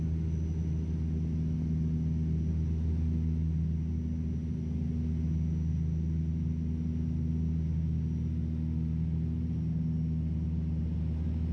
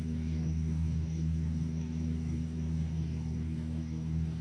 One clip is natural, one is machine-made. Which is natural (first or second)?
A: first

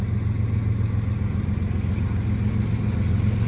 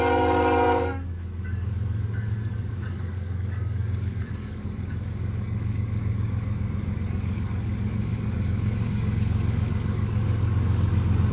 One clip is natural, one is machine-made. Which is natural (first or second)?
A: first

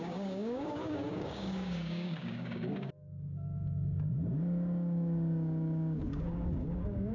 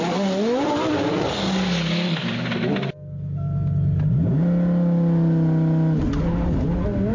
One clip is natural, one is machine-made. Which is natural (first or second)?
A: second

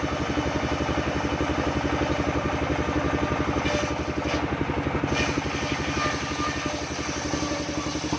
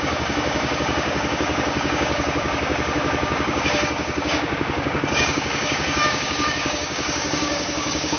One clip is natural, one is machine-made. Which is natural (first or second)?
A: first